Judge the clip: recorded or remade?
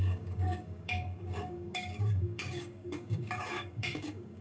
remade